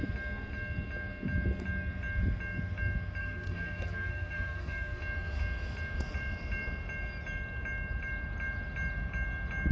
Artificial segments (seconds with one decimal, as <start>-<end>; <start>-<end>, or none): 3.2-5.0